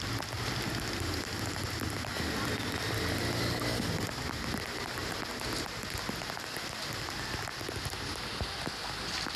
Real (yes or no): yes